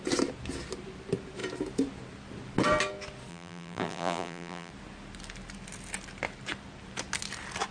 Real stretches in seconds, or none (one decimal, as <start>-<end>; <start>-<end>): 0.0-3.3; 4.7-7.7